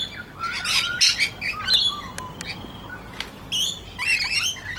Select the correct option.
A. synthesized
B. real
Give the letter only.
B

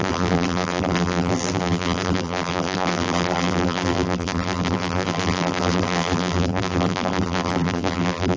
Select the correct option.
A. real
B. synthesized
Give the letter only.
B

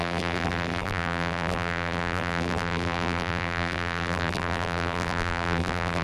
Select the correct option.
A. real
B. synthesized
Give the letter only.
B